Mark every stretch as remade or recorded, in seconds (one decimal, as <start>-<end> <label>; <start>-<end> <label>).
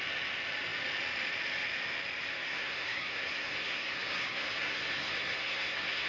0.0-2.3 recorded; 2.3-6.1 remade